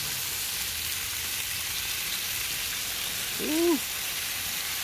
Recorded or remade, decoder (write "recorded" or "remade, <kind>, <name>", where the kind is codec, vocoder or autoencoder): recorded